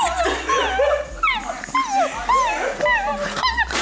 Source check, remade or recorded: recorded